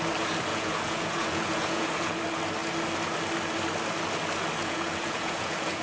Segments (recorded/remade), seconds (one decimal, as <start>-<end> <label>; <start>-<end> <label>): 0.0-0.5 recorded; 0.5-2.2 remade; 2.2-4.6 recorded; 4.6-5.8 remade